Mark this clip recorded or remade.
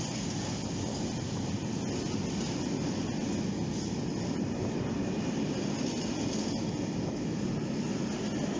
recorded